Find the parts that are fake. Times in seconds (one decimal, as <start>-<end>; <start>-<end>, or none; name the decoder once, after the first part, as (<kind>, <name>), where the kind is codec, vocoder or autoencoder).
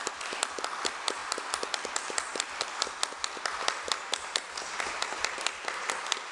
1.2-1.7 (vocoder, BigVGAN v2)